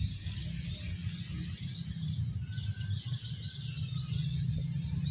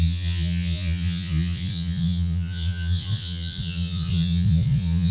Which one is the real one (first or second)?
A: first